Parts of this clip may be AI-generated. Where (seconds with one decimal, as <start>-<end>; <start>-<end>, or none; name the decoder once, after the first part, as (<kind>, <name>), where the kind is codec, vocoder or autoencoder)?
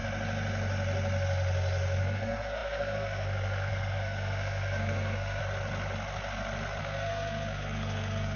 2.0-5.4 (codec, SNAC); 6.8-8.4